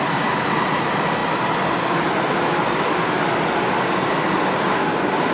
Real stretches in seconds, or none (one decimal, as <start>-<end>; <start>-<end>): 0.0-5.3

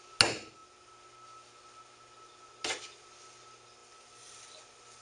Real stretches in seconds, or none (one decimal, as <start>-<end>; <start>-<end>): 0.0-5.0